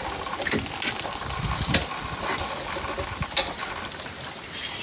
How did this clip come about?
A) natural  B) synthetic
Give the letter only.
A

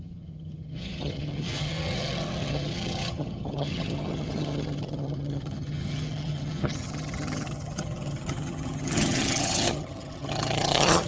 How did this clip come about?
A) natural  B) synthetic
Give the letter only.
B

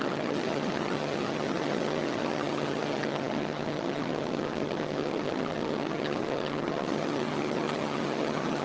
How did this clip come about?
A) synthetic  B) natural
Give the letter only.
A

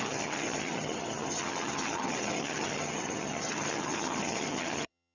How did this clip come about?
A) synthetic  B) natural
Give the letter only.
A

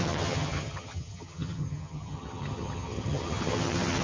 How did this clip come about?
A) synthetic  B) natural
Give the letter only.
A